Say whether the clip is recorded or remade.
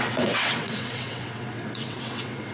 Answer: remade